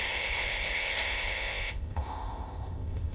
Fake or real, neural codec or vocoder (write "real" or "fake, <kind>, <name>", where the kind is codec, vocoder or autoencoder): fake, codec, ZipCodec